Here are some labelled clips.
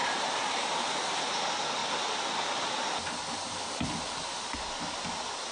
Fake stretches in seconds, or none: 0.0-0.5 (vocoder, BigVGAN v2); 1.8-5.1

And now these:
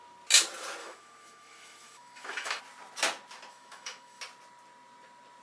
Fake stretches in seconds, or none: 0.8-2.6 (autoencoder, DAC-VAE); 3.5-4.2